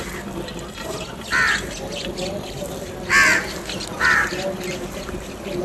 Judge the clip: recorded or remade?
recorded